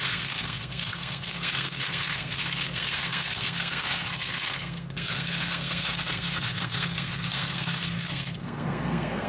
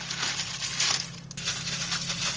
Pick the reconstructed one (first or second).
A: first